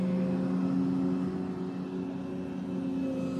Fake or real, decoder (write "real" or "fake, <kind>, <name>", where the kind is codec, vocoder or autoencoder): real